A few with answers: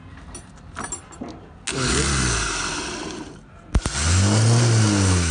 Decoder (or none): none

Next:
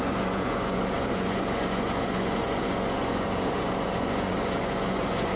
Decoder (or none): vocoder, Vocos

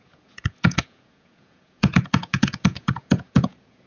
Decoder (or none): vocoder, Vocos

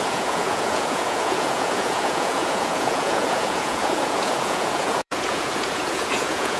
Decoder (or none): vocoder, Vocos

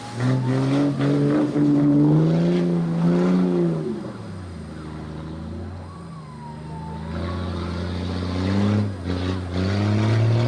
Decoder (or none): none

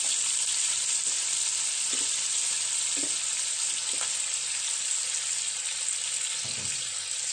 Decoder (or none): none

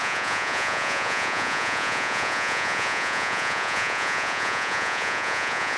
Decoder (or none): vocoder, Vocos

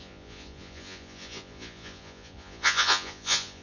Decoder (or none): vocoder, Vocos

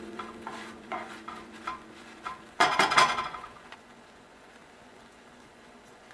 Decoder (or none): vocoder, Vocos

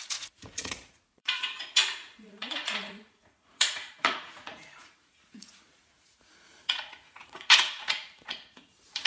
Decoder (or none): vocoder, Vocos